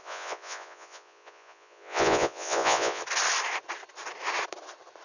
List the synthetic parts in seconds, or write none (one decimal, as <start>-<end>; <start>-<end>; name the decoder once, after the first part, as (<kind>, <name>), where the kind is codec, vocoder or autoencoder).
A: 0.0-3.0 (vocoder, Vocos)